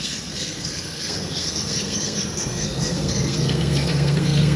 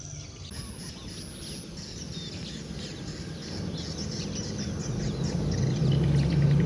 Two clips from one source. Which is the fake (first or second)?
first